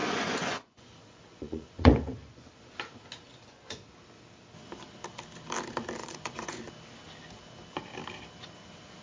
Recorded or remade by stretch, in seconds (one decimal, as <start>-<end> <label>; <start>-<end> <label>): 0.0-2.6 remade; 2.6-3.3 recorded; 3.3-3.9 remade; 3.9-6.0 recorded; 6.0-6.6 remade; 6.6-9.0 recorded